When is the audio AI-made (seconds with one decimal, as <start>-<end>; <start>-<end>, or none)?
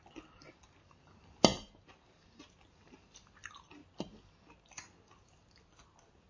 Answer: none